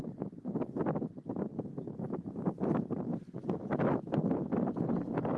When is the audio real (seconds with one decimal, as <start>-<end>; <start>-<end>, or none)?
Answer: 0.0-5.4